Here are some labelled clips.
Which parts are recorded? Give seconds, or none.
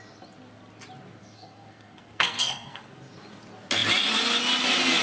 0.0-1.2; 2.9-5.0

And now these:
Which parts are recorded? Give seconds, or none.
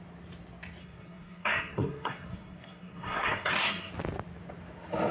0.0-0.8; 3.9-5.1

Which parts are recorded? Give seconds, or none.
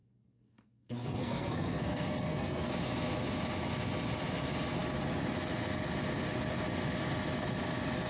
2.7-8.1